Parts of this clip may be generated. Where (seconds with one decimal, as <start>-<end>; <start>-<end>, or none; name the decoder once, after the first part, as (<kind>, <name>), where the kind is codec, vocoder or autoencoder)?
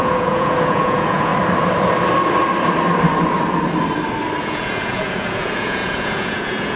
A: 0.0-1.3 (vocoder, Vocos); 4.4-6.8